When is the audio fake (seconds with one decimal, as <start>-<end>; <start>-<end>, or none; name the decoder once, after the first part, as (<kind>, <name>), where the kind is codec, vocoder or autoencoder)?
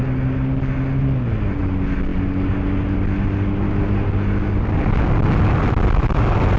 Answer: none